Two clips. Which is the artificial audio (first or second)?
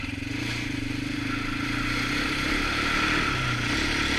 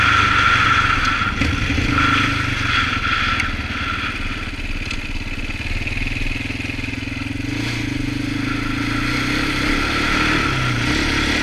first